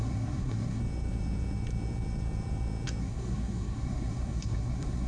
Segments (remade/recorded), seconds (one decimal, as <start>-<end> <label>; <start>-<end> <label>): 0.0-0.8 remade; 0.8-3.0 recorded; 3.0-5.1 remade